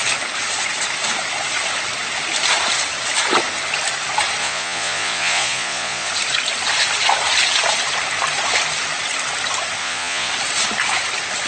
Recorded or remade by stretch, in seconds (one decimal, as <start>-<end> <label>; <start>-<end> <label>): 0.0-4.4 recorded; 4.4-6.1 remade; 6.1-9.8 recorded; 9.8-10.3 remade; 10.3-11.5 recorded